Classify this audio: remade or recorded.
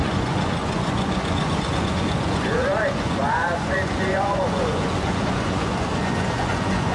remade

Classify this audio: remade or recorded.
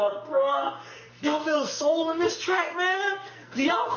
remade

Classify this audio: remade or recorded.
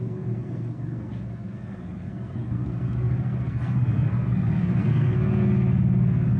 remade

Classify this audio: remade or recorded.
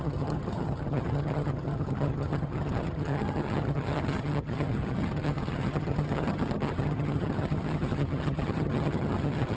remade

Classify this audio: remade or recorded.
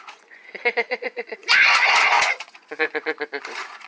remade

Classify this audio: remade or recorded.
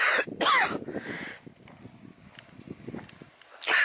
recorded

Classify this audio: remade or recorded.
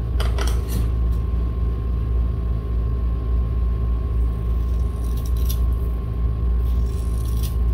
recorded